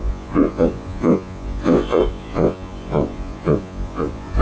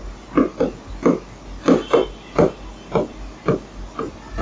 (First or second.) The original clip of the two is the second